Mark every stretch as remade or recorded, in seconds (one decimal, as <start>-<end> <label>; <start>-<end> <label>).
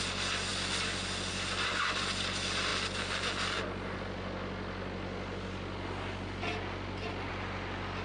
0.0-8.0 recorded